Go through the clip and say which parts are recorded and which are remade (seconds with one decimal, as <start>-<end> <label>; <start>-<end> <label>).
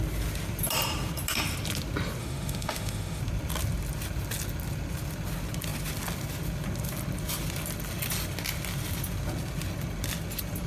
0.0-2.2 recorded; 2.2-3.2 remade; 3.2-10.7 recorded